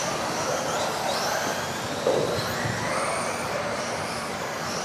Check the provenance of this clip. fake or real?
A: real